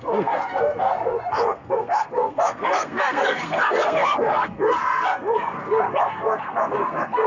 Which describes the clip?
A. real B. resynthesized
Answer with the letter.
B